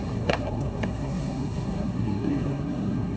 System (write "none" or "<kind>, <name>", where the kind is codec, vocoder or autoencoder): codec, SNAC